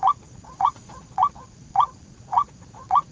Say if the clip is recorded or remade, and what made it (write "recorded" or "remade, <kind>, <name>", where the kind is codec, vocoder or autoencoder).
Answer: remade, vocoder, Vocos